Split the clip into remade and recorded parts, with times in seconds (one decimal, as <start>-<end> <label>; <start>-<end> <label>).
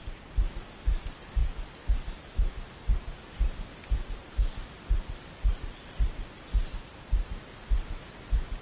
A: 0.0-8.6 recorded